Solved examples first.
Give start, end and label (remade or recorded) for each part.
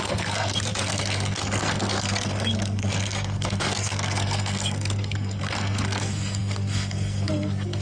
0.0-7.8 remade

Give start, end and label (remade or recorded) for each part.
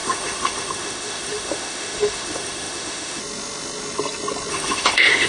0.0-3.2 remade; 3.2-4.5 recorded; 4.5-5.3 remade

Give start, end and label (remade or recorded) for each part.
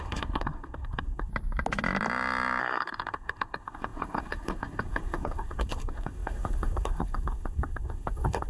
0.0-1.3 remade; 1.3-2.6 recorded; 2.6-8.5 remade